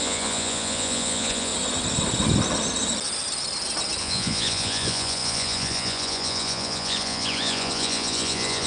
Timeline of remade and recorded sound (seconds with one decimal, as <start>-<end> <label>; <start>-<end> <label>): 0.0-1.5 remade; 1.5-4.0 recorded; 4.0-8.7 remade